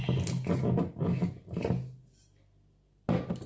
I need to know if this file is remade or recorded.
recorded